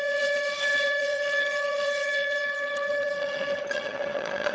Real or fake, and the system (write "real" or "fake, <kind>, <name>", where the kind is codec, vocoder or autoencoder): fake, vocoder, HiFi-GAN